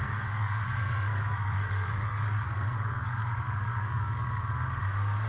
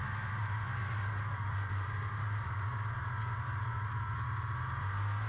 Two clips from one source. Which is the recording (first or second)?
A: second